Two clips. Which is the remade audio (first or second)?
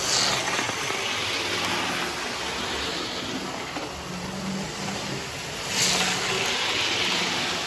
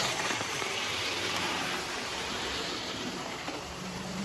second